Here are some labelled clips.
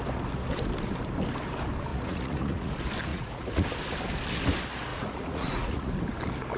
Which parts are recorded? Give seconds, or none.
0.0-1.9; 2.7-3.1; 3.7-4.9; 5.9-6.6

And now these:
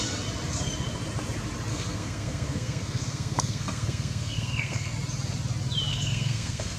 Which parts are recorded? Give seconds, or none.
0.0-1.7; 4.9-5.9

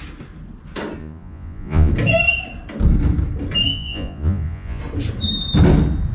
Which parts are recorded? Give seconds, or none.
0.0-1.0; 1.9-3.7; 4.8-6.1

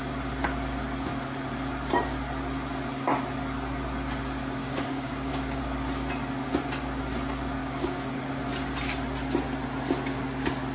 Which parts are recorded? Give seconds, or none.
0.0-4.6; 5.6-7.6; 8.3-10.7

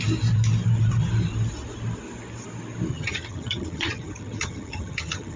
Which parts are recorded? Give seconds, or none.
0.0-2.9

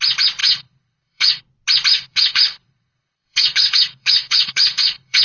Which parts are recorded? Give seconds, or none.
0.0-0.4; 1.4-1.9

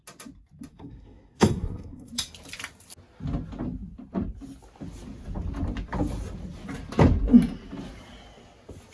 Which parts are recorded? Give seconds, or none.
0.0-0.7; 2.1-8.9